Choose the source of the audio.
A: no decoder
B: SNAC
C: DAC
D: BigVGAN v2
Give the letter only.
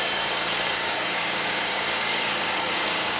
C